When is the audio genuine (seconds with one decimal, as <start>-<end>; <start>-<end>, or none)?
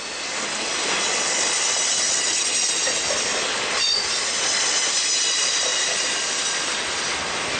0.0-7.6